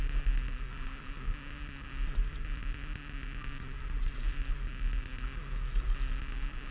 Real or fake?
real